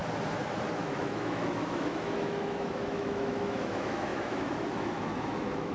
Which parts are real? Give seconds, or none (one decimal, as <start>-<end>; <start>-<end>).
0.0-0.7